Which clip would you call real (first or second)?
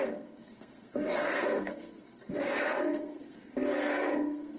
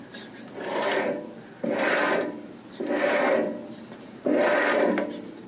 second